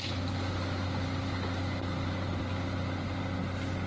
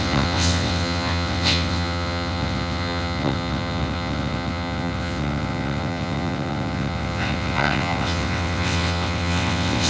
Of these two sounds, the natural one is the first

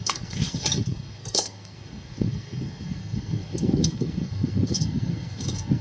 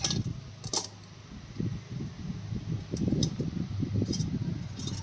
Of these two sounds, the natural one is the second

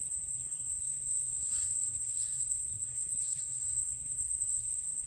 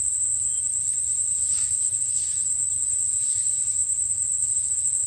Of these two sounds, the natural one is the second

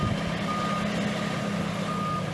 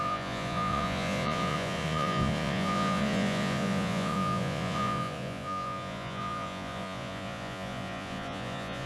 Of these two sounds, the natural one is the first